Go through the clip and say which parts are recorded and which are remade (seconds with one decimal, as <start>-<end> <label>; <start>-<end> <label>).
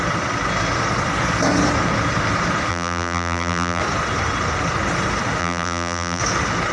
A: 0.0-2.7 recorded; 2.7-3.8 remade; 3.8-5.4 recorded; 5.4-6.2 remade; 6.2-6.7 recorded